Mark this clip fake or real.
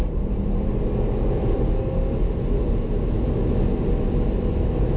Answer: real